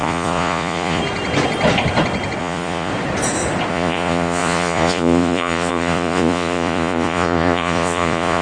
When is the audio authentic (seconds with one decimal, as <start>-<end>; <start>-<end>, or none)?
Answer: 1.0-2.4; 2.9-3.7